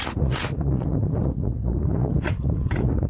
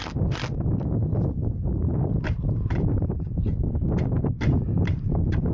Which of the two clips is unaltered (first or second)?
second